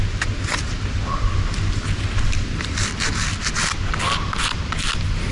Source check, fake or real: real